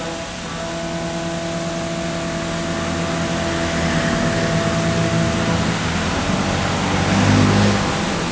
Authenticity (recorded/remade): recorded